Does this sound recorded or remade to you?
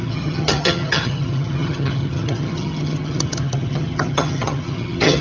remade